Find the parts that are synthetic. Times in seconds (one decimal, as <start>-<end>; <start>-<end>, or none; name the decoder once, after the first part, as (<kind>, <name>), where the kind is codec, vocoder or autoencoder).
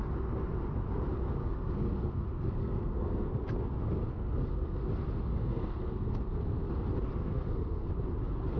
1.4-3.5 (codec, SNAC); 4.1-4.8; 5.3-6.7; 7.2-7.9